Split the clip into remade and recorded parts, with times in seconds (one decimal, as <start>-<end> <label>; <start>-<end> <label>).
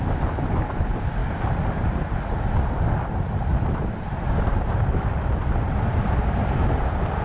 0.0-7.2 recorded